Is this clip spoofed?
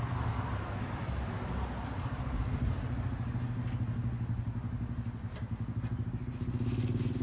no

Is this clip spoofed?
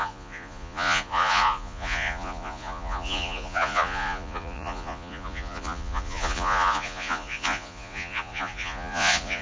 yes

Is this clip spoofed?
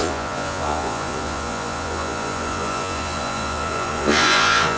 yes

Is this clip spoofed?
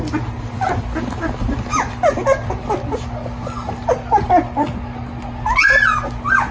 no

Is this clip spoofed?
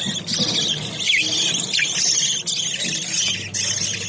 no